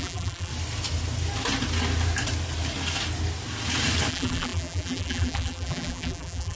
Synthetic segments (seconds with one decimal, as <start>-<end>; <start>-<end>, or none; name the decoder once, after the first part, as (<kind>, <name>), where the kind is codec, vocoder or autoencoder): 0.0-0.5 (vocoder, BigVGAN v2); 4.1-6.6